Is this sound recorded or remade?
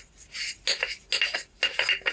recorded